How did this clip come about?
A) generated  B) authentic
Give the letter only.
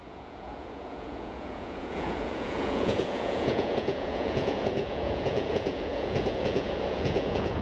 A